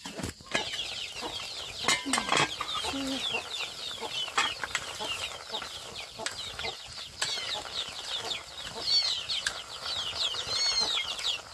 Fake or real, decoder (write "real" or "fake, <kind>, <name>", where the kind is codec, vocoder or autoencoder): real